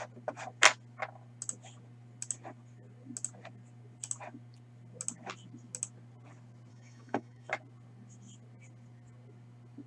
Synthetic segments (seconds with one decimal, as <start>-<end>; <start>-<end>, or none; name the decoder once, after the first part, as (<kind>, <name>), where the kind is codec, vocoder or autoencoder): 6.7-7.5 (autoencoder, DAC-VAE)